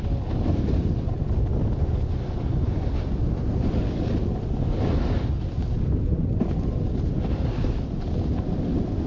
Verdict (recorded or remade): recorded